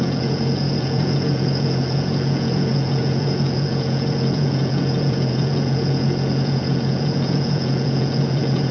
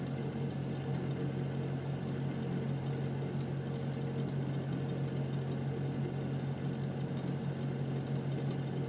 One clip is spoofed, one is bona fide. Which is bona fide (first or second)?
second